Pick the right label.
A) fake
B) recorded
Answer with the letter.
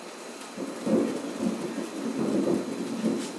B